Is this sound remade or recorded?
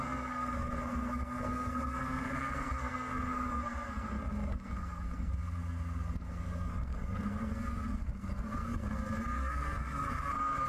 remade